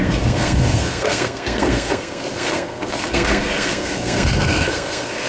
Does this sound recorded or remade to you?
remade